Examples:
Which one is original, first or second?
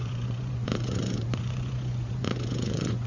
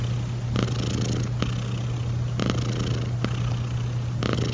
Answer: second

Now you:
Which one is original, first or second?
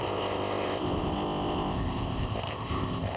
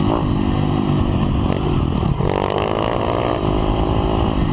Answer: second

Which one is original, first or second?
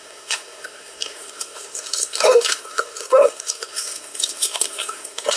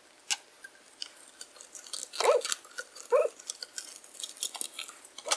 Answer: second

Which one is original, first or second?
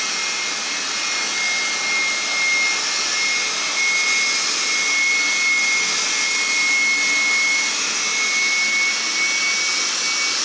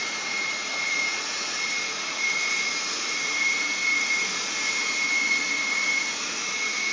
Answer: first